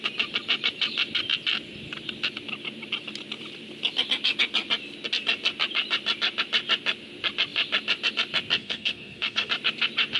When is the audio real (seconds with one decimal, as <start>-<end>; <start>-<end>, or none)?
0.0-8.6; 9.5-10.2